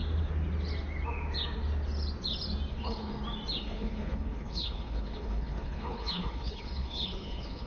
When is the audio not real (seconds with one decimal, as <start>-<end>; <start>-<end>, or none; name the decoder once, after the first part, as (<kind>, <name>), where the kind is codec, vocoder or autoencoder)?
2.7-3.1 (codec, HILCodec); 3.6-7.7